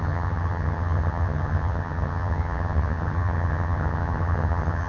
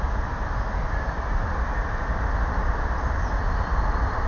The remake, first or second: first